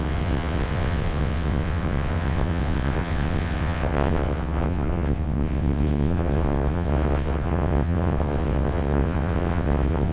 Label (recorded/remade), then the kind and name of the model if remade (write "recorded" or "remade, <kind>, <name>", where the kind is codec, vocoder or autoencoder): remade, vocoder, WaveNeXt